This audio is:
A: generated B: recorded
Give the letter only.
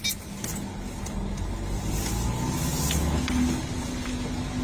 B